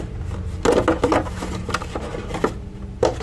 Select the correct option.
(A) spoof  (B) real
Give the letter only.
B